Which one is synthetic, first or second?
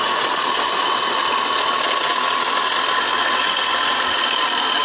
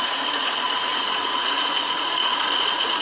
second